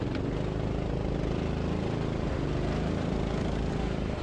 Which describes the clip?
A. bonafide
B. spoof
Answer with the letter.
A